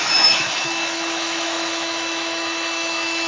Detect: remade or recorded remade